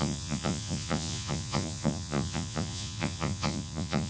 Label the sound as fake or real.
fake